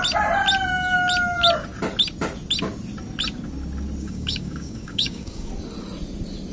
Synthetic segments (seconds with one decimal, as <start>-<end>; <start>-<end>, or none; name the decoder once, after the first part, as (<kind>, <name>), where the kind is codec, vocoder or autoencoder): 4.0-5.5 (codec, DAC)